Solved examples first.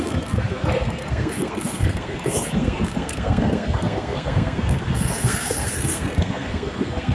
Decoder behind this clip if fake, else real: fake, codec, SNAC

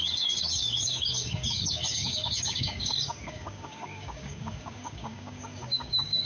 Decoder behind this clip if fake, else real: fake, codec, DAC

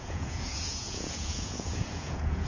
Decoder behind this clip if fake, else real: fake, vocoder, Vocos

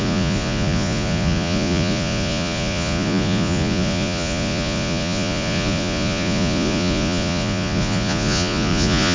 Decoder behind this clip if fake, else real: fake, vocoder, Vocos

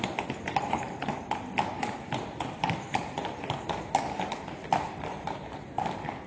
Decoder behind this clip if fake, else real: real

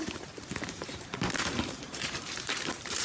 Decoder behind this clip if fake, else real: fake, vocoder, BigVGAN v2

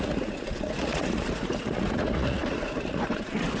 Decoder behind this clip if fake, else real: fake, vocoder, Vocos